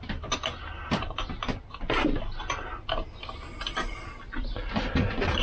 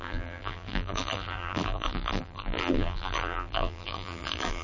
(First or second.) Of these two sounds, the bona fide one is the first